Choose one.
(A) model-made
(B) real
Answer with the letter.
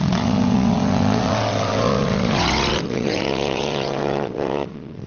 A